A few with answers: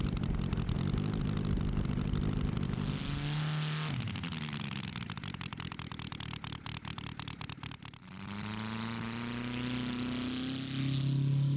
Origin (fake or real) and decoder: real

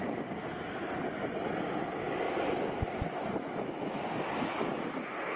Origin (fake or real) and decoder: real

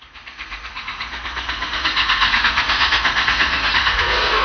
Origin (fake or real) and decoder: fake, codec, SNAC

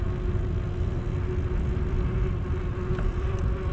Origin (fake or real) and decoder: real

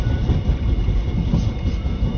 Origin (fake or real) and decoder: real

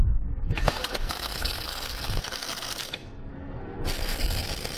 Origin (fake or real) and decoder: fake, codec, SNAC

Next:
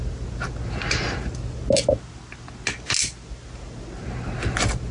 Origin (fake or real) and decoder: real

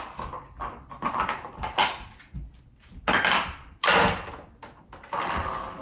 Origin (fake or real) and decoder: real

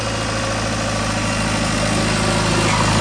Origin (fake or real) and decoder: real